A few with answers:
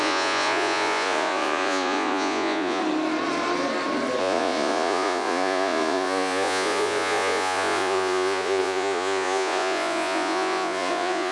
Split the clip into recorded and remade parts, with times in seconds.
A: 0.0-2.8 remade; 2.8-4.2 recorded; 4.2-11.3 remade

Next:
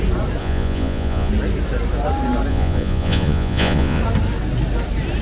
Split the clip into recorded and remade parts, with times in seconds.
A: 0.0-0.4 recorded; 0.4-1.3 remade; 1.3-2.5 recorded; 2.5-4.0 remade; 4.0-5.2 recorded

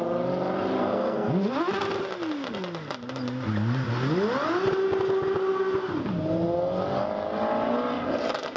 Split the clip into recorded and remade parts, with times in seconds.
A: 0.0-0.8 recorded; 0.8-1.3 remade; 1.3-8.6 recorded

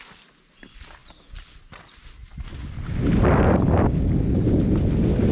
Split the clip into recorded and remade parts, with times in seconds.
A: 0.0-5.3 recorded